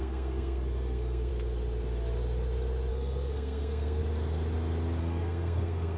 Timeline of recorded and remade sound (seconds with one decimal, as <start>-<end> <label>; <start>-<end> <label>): 0.0-1.3 remade; 1.3-2.9 recorded; 2.9-4.0 remade; 4.0-5.0 recorded; 5.0-6.0 remade